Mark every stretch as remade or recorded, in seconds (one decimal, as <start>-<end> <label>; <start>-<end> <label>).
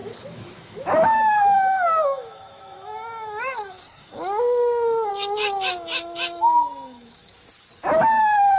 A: 0.0-7.3 remade; 7.3-8.2 recorded; 8.2-8.6 remade